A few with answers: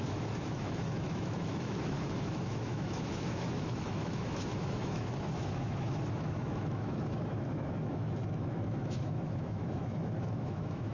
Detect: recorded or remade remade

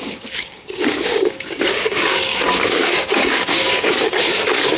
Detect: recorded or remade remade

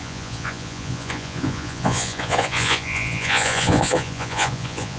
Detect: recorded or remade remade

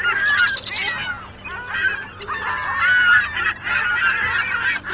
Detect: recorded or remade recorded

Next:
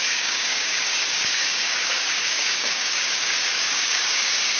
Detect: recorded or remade remade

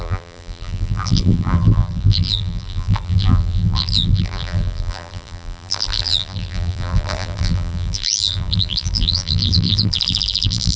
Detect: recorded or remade remade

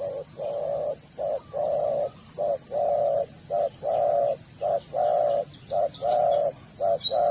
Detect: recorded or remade recorded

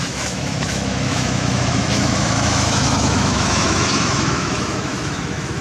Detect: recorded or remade remade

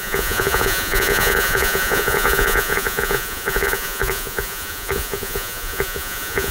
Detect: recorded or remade remade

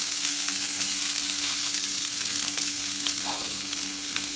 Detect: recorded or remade remade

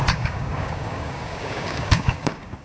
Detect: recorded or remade remade